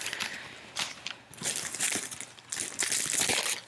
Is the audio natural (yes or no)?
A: yes